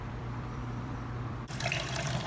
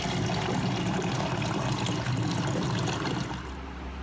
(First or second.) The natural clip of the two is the second